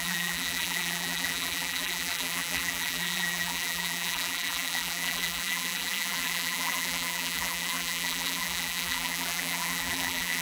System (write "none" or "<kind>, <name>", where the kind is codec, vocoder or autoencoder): vocoder, BigVGAN v2